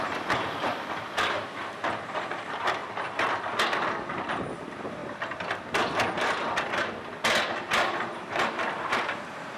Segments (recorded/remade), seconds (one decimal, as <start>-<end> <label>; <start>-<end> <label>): 0.0-2.8 remade; 2.8-4.1 recorded; 4.1-5.0 remade; 5.0-7.9 recorded; 7.9-9.6 remade